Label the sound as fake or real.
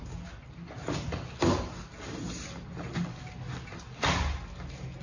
real